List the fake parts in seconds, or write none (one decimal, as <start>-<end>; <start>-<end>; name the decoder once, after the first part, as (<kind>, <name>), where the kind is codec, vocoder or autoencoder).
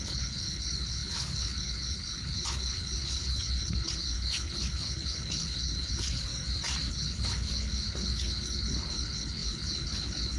0.0-6.3 (codec, HILCodec); 6.9-10.4